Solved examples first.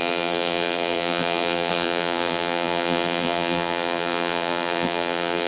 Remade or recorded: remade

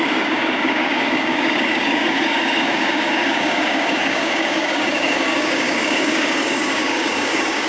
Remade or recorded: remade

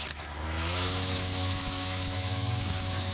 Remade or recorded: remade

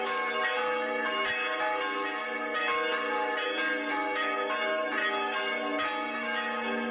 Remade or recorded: recorded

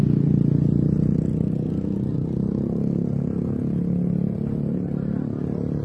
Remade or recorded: recorded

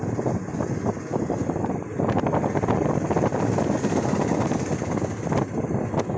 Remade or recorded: recorded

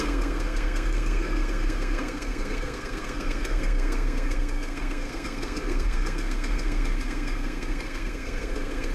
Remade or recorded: remade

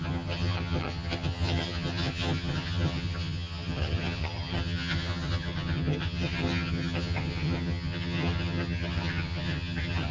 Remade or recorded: remade